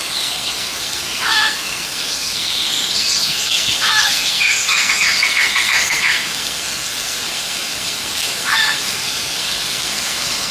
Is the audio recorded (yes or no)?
no